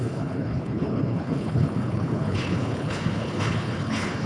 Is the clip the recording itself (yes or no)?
no